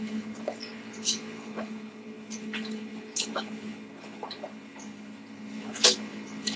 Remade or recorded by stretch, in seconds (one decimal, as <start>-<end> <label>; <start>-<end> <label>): 0.0-6.6 remade